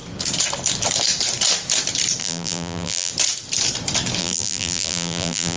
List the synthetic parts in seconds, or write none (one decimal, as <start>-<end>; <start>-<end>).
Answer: 2.2-3.1; 4.2-5.6